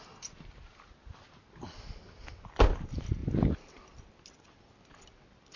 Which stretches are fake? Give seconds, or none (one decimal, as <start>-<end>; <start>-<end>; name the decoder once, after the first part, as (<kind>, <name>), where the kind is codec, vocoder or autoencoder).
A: none